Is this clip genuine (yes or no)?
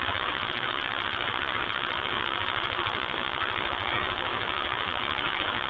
no